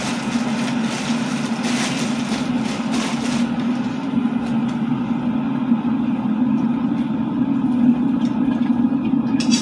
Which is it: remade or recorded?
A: recorded